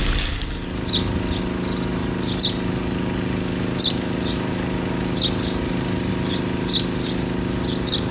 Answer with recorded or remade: recorded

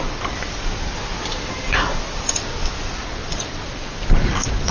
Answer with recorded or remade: recorded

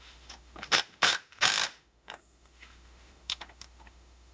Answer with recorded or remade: remade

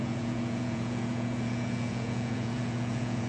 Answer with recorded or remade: remade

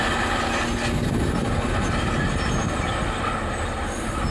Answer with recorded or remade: recorded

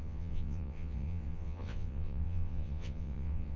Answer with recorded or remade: remade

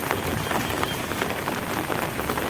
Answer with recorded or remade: recorded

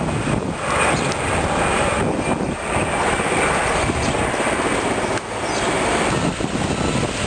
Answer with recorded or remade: recorded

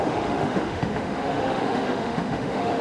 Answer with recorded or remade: remade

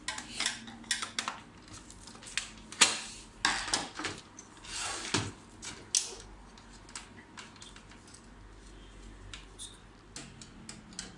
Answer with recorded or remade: recorded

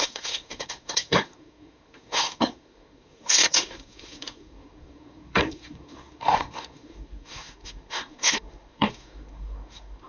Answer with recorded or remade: remade